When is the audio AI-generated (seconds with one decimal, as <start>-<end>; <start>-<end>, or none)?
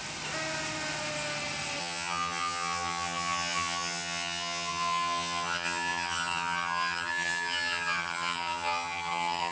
1.8-9.5